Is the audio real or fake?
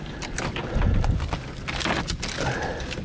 real